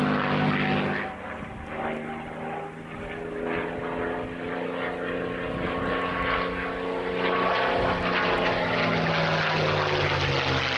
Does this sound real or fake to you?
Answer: real